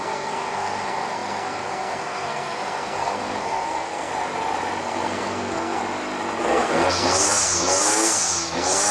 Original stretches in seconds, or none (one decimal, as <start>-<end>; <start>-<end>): 4.1-4.8; 5.8-6.4